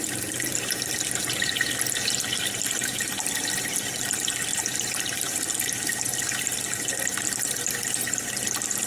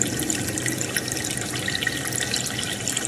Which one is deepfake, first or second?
second